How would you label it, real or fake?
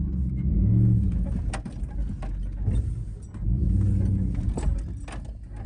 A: real